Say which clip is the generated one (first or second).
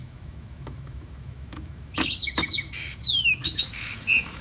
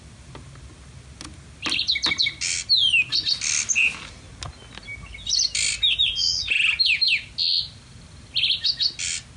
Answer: first